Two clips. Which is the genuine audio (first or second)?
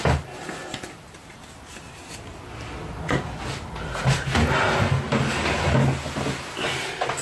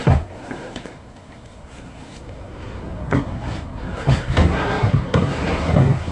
first